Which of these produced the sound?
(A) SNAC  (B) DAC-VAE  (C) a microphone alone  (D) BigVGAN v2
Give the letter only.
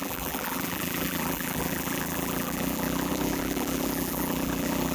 D